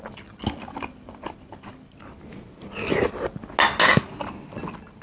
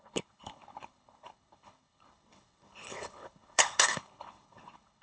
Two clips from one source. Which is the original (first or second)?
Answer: first